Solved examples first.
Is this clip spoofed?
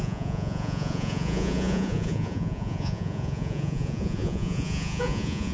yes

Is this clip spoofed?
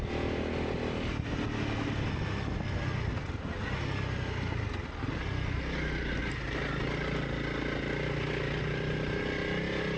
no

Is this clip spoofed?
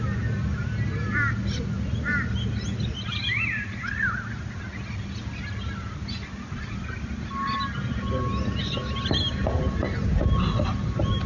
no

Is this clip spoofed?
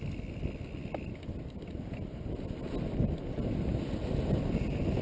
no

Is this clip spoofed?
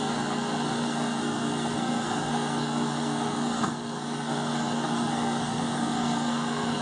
yes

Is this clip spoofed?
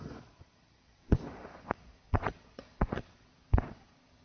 yes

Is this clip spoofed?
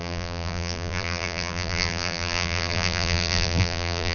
yes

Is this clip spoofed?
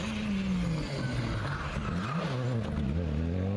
no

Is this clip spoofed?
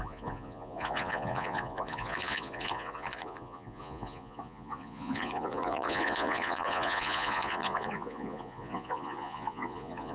yes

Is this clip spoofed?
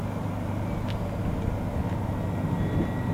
no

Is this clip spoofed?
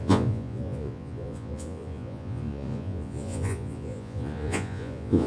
yes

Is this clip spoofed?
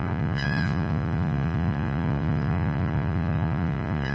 yes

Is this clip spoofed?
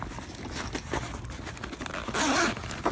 no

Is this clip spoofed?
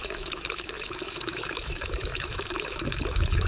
yes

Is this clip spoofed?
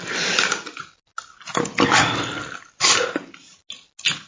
no